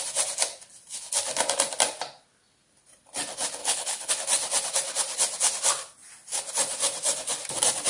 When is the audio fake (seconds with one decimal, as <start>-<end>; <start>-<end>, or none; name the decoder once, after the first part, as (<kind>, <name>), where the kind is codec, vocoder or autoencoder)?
3.6-4.1 (codec, HILCodec)